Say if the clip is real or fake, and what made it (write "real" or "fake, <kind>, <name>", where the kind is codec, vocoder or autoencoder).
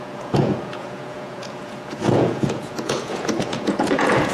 fake, vocoder, Vocos